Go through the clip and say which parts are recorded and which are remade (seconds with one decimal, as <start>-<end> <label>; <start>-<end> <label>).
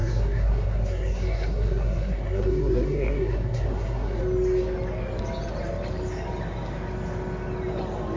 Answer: 0.0-4.2 remade; 4.2-8.2 recorded